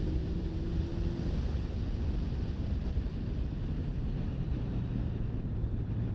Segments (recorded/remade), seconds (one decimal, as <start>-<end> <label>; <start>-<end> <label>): 0.0-0.9 remade; 0.9-2.5 recorded; 2.5-3.1 remade; 3.1-4.1 recorded; 4.1-6.1 remade